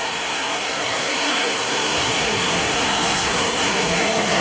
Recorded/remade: remade